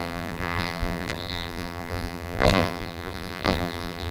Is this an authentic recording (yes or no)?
no